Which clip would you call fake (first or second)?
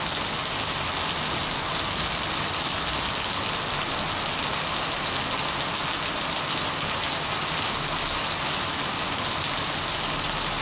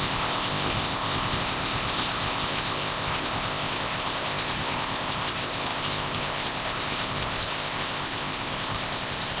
second